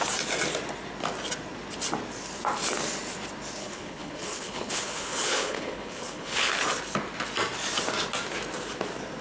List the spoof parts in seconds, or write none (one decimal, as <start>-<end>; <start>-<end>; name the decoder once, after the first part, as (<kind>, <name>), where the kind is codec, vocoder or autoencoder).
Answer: 3.6-6.5 (codec, HILCodec)